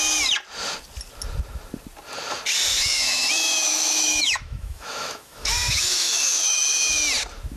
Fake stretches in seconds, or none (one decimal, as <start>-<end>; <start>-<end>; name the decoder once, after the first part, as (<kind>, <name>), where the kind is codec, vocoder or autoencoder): 2.7-7.0 (autoencoder, DAC-VAE)